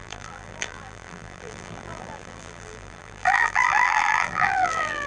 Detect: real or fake fake